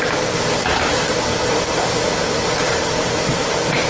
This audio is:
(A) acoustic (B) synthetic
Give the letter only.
B